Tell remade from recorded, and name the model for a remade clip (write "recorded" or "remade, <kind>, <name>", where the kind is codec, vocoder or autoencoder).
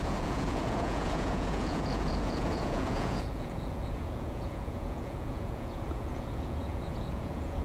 remade, vocoder, Vocos